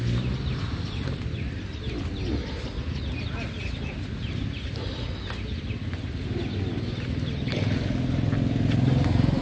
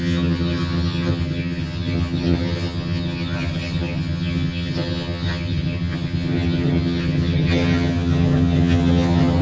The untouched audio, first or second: first